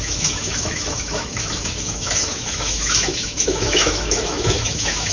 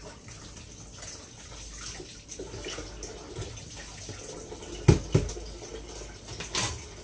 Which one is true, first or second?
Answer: second